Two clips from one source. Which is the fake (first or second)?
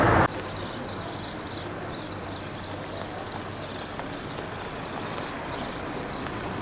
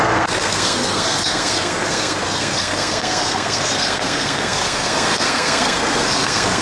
second